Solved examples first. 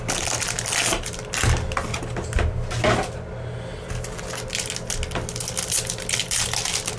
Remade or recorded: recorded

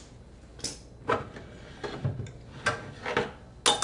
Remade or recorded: recorded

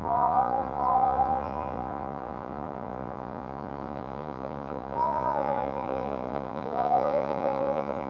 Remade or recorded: remade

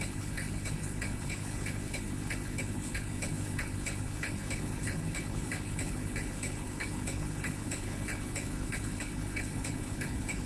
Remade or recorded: remade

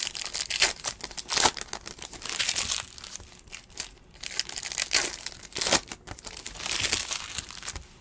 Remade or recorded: recorded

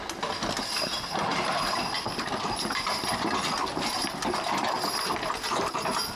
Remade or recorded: recorded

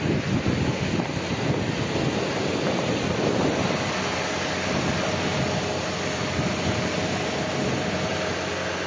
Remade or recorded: recorded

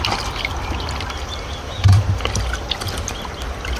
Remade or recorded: recorded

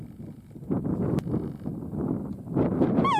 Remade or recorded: recorded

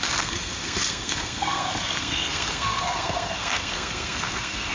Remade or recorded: remade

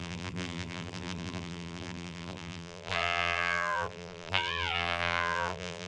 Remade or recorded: remade